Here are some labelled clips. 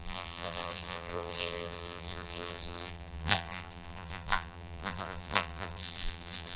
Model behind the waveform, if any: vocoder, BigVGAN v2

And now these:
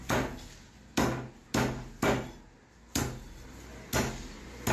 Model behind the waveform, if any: none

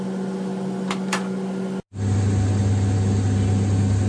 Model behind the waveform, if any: none